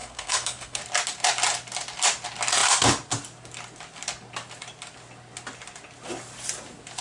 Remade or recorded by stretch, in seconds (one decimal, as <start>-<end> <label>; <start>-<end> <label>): 0.0-0.8 remade; 0.8-7.0 recorded

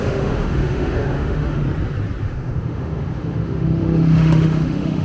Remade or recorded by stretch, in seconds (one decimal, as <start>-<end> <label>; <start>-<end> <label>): 0.0-1.6 remade; 1.6-2.2 recorded; 2.2-5.0 remade